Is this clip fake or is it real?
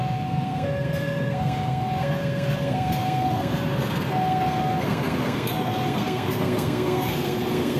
fake